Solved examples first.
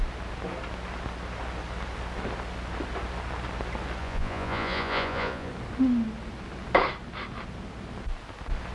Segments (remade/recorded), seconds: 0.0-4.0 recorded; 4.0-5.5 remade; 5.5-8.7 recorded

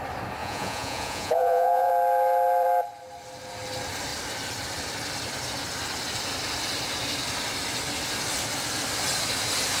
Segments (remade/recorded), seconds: 0.0-0.4 recorded; 0.4-1.9 remade; 1.9-9.8 recorded